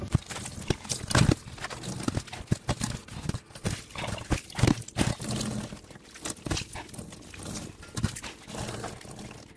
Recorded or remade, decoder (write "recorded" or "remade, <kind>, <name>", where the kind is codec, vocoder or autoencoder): recorded